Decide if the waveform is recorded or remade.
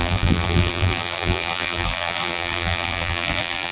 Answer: remade